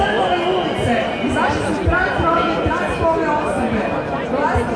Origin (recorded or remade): recorded